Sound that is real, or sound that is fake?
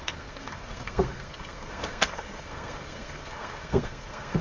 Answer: fake